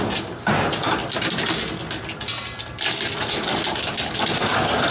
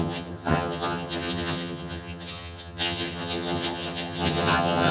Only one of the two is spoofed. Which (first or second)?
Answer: second